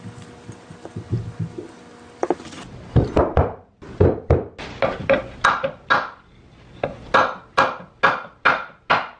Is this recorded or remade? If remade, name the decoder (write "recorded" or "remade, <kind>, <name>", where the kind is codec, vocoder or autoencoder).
recorded